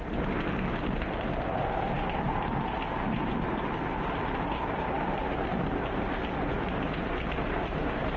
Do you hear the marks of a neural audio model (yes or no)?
no